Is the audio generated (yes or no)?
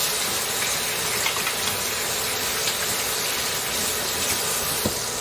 no